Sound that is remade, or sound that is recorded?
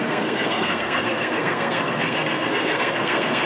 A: remade